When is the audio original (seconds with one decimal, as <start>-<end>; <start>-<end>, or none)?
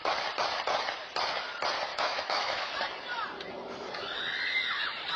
0.0-1.9; 2.7-5.2